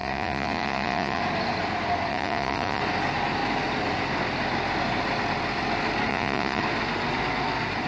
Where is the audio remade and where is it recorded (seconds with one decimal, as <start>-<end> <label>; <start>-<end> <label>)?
0.0-1.2 remade; 1.2-2.1 recorded; 2.1-2.8 remade; 2.8-6.1 recorded; 6.1-6.6 remade; 6.6-7.9 recorded